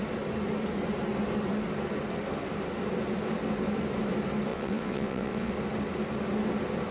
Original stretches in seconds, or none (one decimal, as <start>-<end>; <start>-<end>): 0.0-4.5; 5.5-6.9